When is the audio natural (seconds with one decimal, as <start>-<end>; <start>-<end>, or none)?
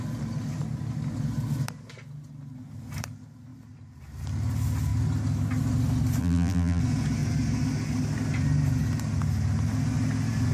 0.0-6.2; 6.8-10.5